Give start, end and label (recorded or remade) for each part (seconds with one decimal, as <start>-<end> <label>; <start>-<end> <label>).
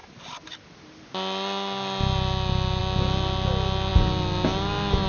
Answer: 0.0-5.1 recorded